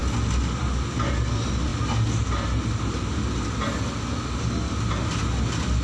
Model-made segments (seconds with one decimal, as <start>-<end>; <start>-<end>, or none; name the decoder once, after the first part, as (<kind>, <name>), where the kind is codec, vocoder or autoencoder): none